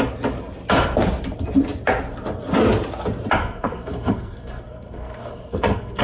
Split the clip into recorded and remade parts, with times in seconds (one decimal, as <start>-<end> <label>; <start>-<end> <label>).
0.0-3.4 recorded; 3.4-6.0 remade